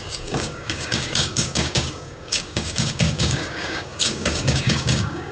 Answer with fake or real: fake